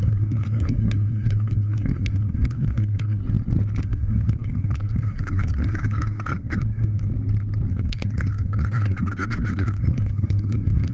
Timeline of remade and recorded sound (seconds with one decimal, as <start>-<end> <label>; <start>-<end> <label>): 0.0-3.2 remade; 3.2-3.8 recorded; 3.8-7.1 remade; 7.1-7.7 recorded; 7.7-10.9 remade